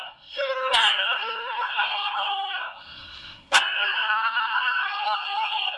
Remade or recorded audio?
remade